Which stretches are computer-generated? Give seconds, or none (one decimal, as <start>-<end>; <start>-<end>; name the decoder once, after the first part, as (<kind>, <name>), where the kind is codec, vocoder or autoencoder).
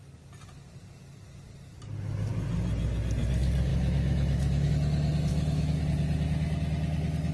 3.7-4.7 (autoencoder, DAC-VAE); 5.3-5.8